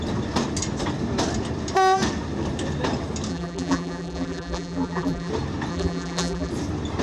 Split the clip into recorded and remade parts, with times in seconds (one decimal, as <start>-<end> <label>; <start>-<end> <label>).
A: 0.0-3.3 recorded; 3.3-5.3 remade; 5.3-5.7 recorded; 5.7-6.5 remade; 6.5-7.0 recorded